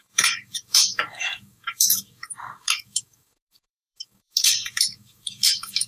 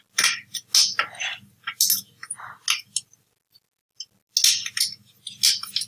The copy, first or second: first